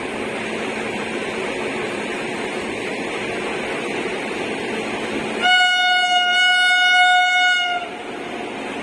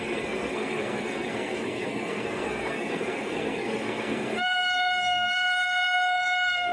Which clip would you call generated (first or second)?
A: second